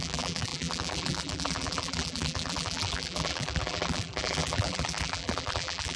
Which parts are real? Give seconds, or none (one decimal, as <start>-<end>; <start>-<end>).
none